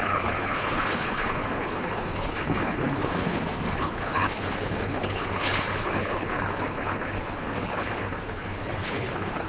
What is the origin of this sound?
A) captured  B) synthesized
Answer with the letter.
B